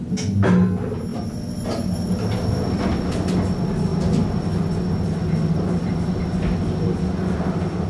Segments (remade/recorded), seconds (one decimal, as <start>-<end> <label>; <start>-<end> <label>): 0.0-7.9 recorded